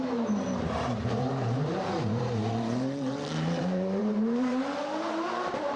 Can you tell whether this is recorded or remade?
remade